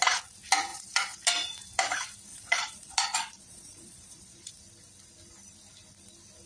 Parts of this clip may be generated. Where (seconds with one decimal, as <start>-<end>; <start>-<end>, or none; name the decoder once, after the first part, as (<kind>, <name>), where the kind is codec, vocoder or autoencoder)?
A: 0.7-1.2 (vocoder, Vocos); 2.3-4.5